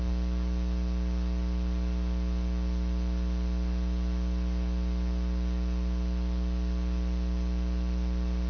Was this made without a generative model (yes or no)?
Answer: yes